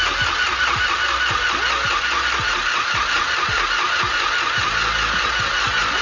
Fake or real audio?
real